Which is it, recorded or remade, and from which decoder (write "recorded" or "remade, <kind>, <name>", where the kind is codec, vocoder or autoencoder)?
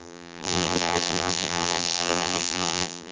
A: remade, vocoder, BigVGAN v2